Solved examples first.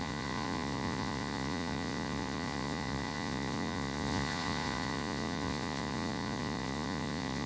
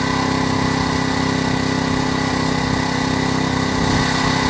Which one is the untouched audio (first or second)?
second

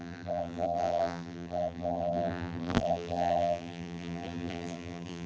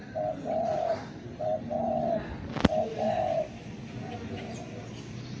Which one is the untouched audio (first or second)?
second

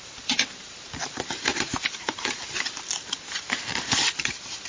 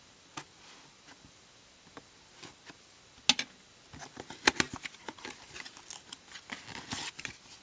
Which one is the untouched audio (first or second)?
second